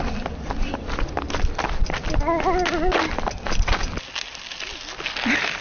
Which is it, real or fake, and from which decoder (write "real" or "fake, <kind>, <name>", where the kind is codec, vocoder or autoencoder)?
real